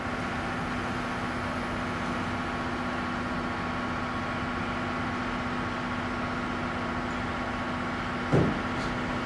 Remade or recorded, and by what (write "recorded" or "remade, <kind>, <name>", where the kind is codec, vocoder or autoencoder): recorded